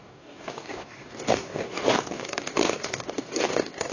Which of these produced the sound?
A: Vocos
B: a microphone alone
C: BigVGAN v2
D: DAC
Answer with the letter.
D